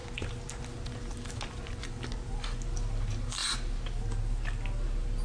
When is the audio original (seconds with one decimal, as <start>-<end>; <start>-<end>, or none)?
0.0-5.2